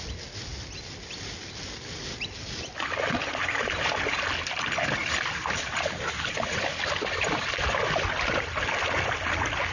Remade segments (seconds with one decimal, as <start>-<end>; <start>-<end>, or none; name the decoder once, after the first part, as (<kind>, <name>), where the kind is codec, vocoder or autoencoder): none